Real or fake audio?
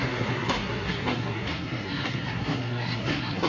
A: fake